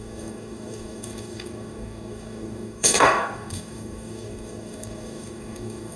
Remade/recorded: remade